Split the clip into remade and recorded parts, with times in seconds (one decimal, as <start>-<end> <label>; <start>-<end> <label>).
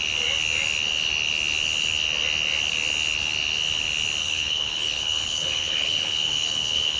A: 0.0-4.2 recorded; 4.2-7.0 remade